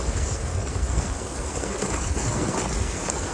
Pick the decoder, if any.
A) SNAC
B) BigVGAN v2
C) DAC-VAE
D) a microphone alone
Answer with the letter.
A